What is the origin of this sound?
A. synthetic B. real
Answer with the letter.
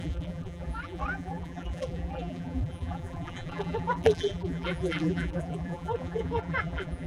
A